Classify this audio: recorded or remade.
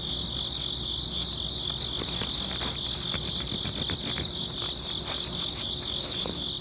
recorded